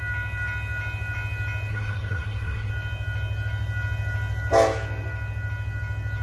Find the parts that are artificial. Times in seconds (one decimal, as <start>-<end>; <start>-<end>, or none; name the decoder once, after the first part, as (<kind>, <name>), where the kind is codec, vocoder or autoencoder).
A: 1.7-2.7 (codec, SNAC)